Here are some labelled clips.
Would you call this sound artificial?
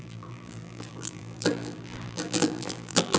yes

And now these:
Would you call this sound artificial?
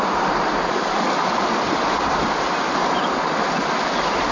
no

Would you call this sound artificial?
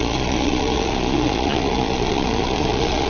yes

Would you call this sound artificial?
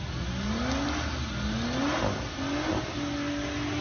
no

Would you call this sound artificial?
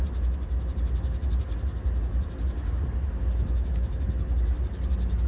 no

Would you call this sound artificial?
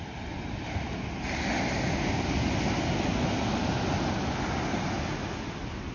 no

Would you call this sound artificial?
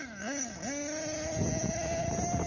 no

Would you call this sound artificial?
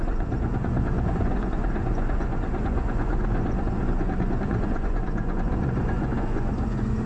yes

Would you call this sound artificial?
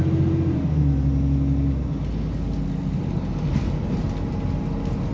no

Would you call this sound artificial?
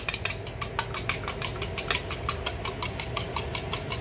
no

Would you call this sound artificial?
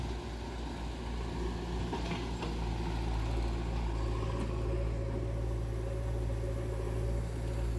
no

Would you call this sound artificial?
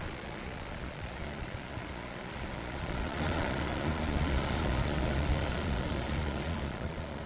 yes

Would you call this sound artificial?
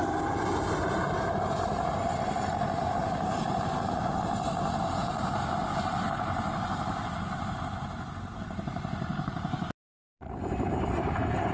yes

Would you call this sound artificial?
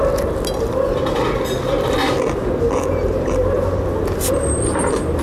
no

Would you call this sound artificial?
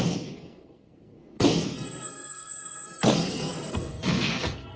yes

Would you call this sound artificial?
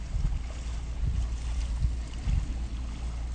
no